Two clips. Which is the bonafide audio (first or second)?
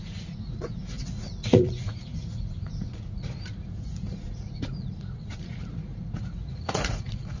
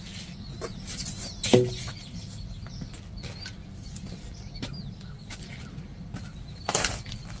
second